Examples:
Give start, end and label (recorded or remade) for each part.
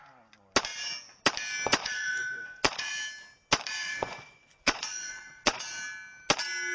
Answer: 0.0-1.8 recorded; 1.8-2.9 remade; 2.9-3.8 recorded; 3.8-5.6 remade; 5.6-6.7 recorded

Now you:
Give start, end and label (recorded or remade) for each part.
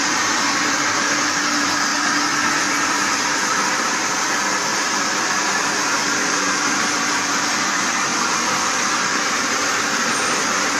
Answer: 0.0-1.9 remade; 1.9-2.6 recorded; 2.6-10.8 remade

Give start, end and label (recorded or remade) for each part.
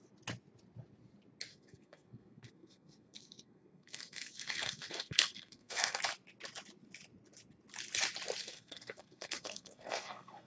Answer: 0.0-1.5 recorded; 1.5-6.0 remade; 6.0-8.4 recorded; 8.4-10.5 remade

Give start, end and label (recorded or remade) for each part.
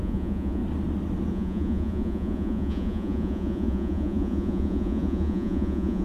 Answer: 0.0-0.6 remade; 0.6-1.3 recorded; 1.3-6.0 remade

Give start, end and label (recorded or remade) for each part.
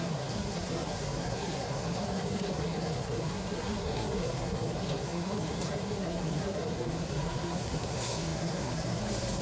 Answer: 0.0-9.4 remade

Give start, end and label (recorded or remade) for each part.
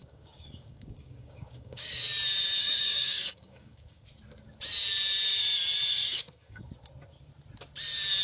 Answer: 0.0-2.0 remade; 2.0-2.6 recorded; 2.6-4.0 remade; 4.0-5.9 recorded; 5.9-6.7 remade; 6.7-8.2 recorded